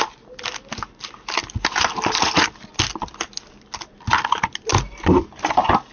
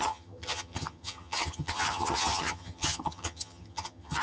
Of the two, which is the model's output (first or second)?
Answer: second